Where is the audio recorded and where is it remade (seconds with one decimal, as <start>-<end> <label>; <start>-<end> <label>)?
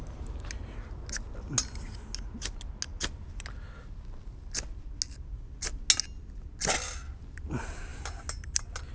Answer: 0.0-8.9 recorded